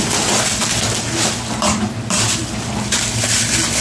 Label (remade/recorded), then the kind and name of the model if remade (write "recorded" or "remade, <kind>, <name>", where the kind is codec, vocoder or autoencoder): recorded